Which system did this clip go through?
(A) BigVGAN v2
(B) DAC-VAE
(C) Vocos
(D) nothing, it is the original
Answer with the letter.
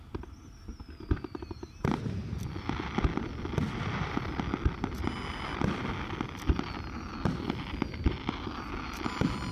D